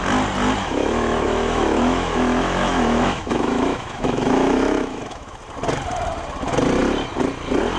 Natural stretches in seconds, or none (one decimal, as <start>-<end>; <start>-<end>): 0.0-0.6; 5.3-7.8